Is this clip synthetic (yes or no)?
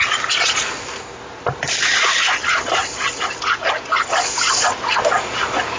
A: no